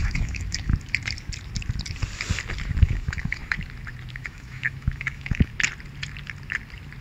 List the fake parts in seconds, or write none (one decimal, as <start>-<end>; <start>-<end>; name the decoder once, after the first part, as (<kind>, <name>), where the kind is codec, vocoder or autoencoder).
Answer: 0.0-0.7 (autoencoder, DAC-VAE); 2.8-3.4; 4.1-5.5